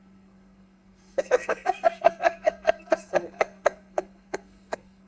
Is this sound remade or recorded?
remade